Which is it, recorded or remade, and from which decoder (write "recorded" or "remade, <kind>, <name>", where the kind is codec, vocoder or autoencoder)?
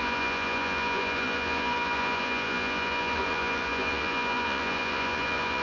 remade, vocoder, Vocos